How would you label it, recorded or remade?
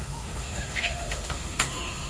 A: remade